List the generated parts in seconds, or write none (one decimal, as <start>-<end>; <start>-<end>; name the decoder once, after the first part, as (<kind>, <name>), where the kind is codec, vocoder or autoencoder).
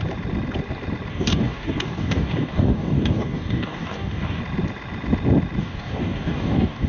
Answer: 1.1-4.4 (codec, DAC); 5.6-6.9